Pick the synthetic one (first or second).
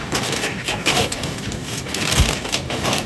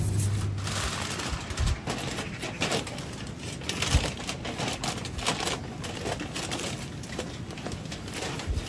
first